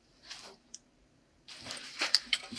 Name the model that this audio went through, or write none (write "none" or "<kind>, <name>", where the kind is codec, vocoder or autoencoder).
vocoder, BigVGAN v2